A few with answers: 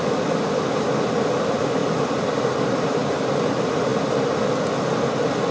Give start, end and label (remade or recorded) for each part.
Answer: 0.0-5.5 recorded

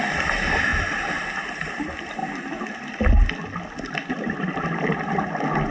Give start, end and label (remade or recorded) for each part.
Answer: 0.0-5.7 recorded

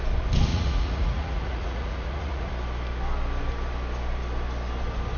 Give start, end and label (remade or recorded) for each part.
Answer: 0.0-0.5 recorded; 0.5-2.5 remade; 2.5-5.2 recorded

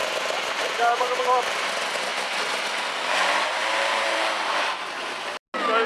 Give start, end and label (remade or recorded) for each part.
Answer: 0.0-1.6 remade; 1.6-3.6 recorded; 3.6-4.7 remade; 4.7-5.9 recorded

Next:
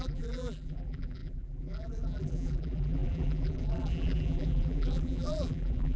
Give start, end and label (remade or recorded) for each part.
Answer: 0.0-6.0 remade

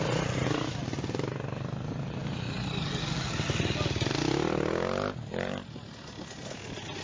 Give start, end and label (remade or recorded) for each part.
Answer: 0.0-7.0 recorded

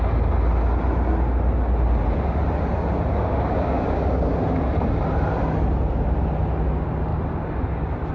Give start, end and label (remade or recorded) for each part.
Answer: 0.0-3.1 recorded; 3.1-4.3 remade; 4.3-8.1 recorded